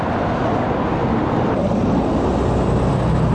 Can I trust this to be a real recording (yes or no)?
yes